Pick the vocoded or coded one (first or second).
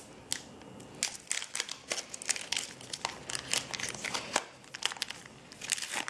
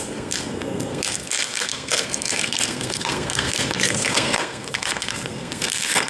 second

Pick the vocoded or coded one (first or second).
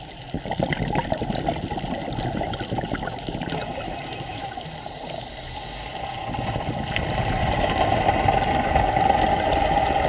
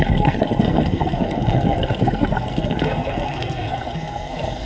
second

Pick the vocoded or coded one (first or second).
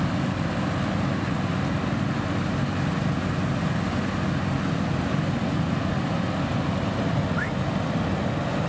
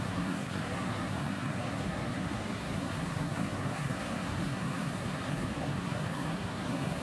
second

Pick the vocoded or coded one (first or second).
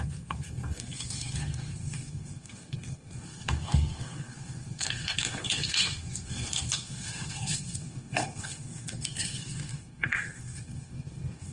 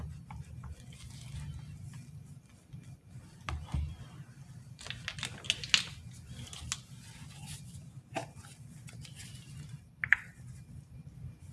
first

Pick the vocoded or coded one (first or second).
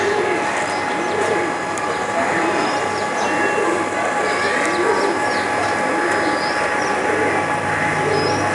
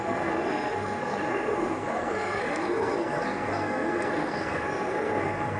second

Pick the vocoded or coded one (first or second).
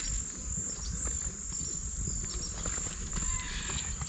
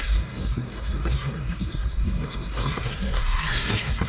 second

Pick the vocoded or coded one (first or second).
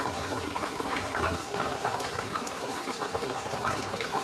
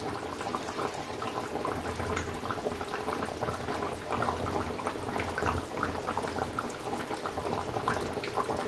first